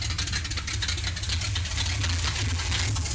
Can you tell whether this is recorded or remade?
recorded